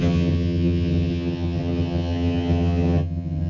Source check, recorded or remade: remade